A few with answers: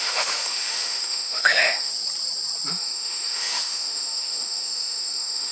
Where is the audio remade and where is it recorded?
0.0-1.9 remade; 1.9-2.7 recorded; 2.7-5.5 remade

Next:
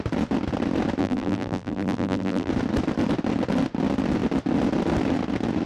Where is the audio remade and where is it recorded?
0.0-1.0 recorded; 1.0-2.5 remade; 2.5-5.7 recorded

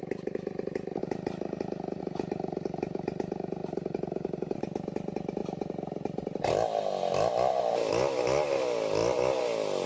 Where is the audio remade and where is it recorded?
0.0-9.9 recorded

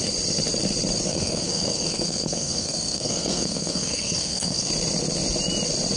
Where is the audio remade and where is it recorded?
0.0-1.1 recorded; 1.1-4.7 remade; 4.7-6.0 recorded